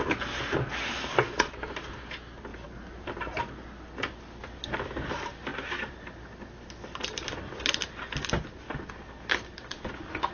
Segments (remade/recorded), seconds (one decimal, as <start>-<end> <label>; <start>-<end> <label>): 0.0-2.5 recorded; 2.5-3.4 remade; 3.4-5.5 recorded; 5.5-6.5 remade; 6.5-10.3 recorded